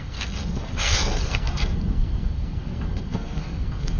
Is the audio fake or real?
fake